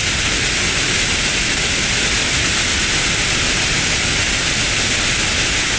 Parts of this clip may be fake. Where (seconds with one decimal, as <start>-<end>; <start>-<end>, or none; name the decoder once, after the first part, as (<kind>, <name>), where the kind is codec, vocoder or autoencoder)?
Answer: none